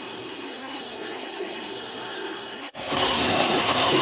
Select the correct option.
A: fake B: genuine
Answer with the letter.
A